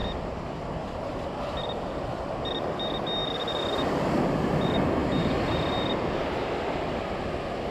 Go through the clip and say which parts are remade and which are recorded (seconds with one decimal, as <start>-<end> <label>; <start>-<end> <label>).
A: 0.0-3.2 recorded; 3.2-4.0 remade; 4.0-7.7 recorded